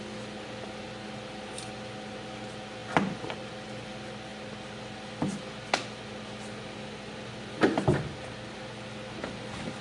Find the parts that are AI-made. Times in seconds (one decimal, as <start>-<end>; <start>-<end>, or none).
none